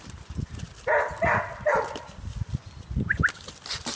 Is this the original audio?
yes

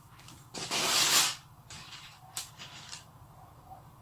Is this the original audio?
no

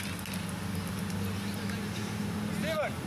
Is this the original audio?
yes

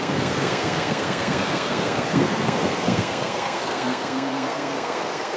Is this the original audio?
no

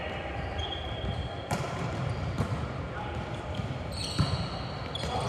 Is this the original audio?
no